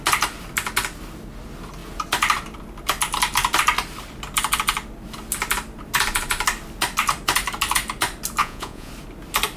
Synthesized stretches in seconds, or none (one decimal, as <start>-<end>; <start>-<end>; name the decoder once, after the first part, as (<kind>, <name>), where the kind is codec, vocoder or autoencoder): 8.4-8.9 (vocoder, Vocos)